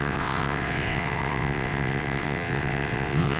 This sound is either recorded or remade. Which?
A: remade